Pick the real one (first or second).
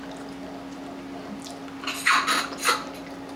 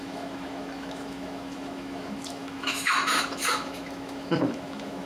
first